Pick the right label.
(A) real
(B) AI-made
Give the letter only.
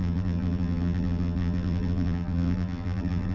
B